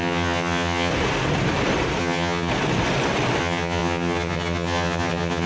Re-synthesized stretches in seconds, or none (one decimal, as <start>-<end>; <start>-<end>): 0.0-0.9; 2.0-2.5; 3.4-5.5